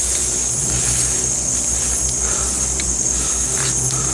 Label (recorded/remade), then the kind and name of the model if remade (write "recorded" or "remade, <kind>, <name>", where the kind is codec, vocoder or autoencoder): recorded